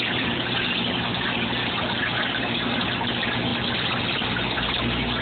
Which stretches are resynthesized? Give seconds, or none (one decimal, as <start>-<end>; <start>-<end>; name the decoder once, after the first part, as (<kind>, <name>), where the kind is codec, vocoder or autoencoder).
3.5-4.8 (vocoder, BigVGAN v2)